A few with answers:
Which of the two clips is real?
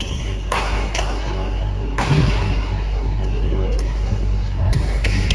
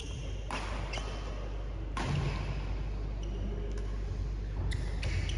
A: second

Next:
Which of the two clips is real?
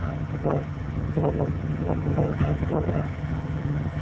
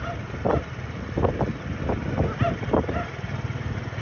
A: second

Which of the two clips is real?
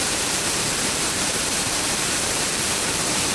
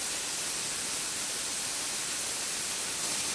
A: second